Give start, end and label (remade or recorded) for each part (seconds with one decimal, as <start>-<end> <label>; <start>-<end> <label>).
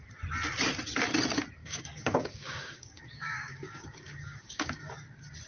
0.0-1.6 recorded; 1.6-4.9 remade; 4.9-5.5 recorded